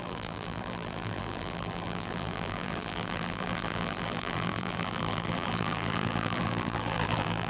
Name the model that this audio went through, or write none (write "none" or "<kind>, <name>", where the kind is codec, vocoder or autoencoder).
vocoder, BigVGAN v2